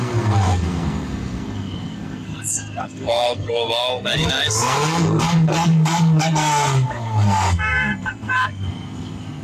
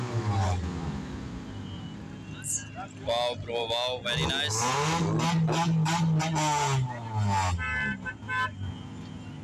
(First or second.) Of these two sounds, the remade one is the first